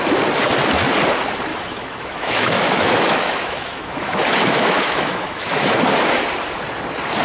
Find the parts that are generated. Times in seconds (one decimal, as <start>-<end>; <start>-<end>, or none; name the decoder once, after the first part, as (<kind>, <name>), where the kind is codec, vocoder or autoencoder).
1.5-5.8 (autoencoder, DAC-VAE)